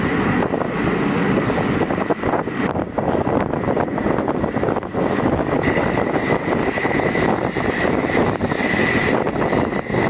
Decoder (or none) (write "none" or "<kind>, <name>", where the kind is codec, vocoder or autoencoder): none